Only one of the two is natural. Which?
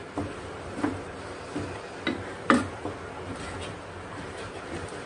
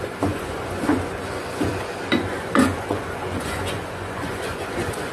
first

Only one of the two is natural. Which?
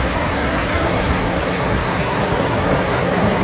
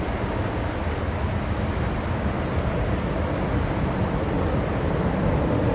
second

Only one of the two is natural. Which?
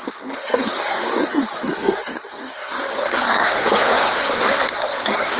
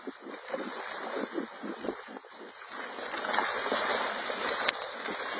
second